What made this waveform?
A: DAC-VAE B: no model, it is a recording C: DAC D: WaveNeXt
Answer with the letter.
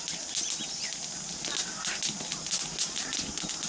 B